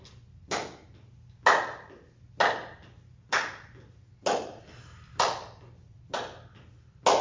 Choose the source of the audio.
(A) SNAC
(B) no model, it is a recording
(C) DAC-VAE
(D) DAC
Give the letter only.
B